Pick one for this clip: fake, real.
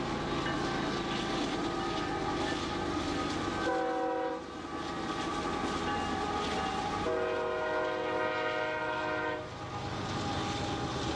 real